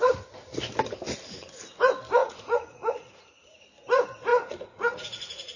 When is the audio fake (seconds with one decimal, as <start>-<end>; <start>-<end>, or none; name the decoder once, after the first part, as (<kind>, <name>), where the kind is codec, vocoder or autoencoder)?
2.2-3.6 (vocoder, Vocos); 4.3-5.6